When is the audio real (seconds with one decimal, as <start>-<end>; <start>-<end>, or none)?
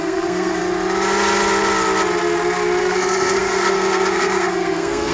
0.6-2.8